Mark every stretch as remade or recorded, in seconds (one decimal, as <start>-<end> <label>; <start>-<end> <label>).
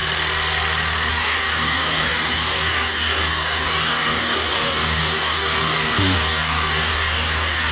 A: 0.0-1.1 recorded; 1.1-7.7 remade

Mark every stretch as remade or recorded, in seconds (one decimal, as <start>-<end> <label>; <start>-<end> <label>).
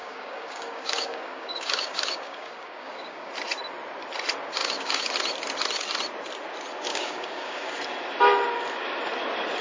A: 0.0-3.3 remade; 3.3-4.6 recorded; 4.6-5.1 remade; 5.1-6.9 recorded; 6.9-7.8 remade; 7.8-9.6 recorded